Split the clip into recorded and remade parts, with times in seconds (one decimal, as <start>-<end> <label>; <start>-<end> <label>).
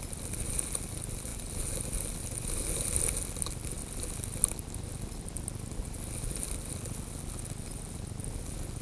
0.0-8.8 recorded